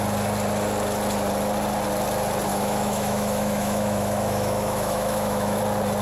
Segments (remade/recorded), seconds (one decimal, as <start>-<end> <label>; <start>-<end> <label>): 0.0-2.5 recorded; 2.5-5.6 remade; 5.6-6.0 recorded